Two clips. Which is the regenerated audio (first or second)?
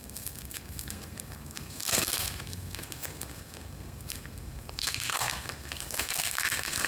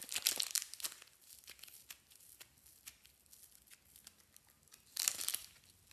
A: first